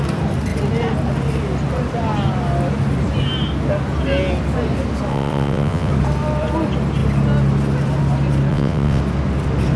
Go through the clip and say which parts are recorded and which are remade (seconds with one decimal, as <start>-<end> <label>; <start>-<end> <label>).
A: 0.0-5.1 recorded; 5.1-5.9 remade; 5.9-8.5 recorded; 8.5-9.0 remade; 9.0-9.8 recorded

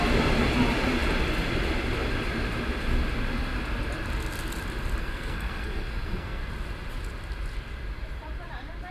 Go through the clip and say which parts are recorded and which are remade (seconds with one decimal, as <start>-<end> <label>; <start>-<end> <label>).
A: 0.0-5.0 recorded; 5.0-6.4 remade; 6.4-8.9 recorded

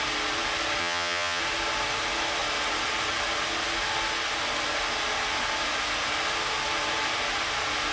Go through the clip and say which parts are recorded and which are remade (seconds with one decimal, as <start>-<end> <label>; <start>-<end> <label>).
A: 0.0-0.8 recorded; 0.8-1.4 remade; 1.4-7.9 recorded

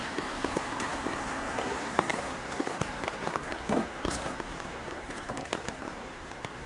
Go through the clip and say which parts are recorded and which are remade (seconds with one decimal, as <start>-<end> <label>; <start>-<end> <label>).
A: 0.0-6.7 remade

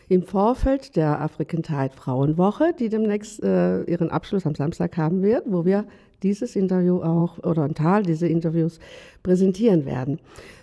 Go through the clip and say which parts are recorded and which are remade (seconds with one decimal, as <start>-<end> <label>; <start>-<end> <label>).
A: 0.0-10.6 recorded

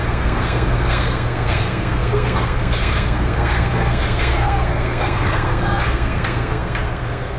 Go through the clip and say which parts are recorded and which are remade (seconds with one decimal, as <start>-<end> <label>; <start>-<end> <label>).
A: 0.0-7.4 remade

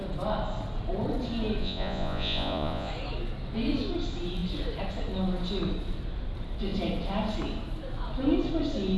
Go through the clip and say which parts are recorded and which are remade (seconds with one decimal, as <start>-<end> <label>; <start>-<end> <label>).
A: 0.0-1.6 recorded; 1.6-2.9 remade; 2.9-9.0 recorded